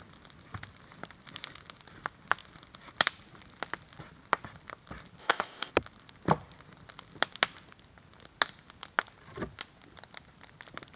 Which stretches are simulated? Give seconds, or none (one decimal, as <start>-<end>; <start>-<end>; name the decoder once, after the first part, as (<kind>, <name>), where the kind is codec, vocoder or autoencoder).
5.2-5.7 (codec, ZipCodec)